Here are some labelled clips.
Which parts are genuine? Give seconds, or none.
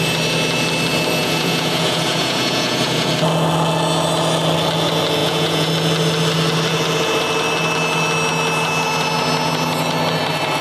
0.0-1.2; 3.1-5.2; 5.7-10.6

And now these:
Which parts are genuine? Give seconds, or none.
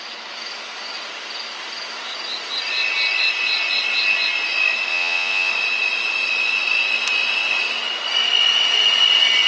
0.0-4.9; 5.5-9.5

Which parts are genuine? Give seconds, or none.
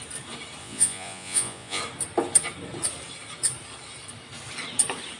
0.0-0.6; 1.8-5.2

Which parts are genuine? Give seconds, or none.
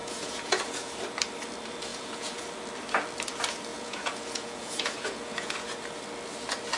0.9-1.9; 2.4-3.7; 5.8-6.8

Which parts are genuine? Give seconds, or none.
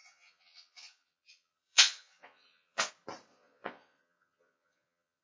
2.9-3.3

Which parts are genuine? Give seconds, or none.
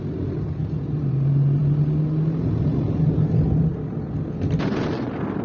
0.0-5.4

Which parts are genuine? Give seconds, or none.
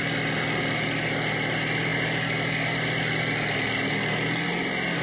0.0-5.0